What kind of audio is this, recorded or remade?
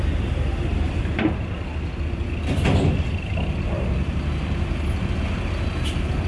recorded